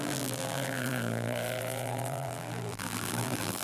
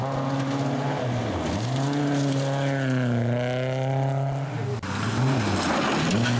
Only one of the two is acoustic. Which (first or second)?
second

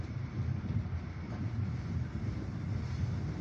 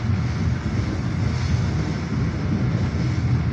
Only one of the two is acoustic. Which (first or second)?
second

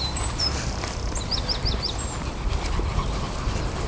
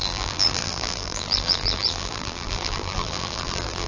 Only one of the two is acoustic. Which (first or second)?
first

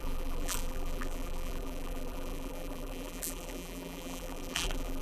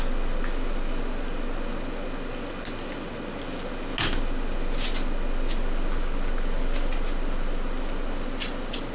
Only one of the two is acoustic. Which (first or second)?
second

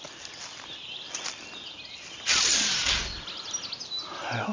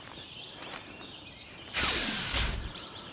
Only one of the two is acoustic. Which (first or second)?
first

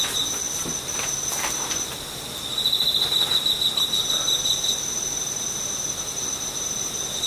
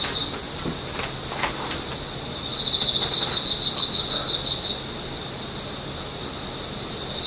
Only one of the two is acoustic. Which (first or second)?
second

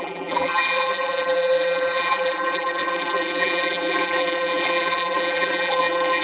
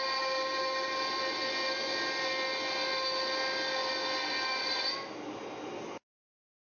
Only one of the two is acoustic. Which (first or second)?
second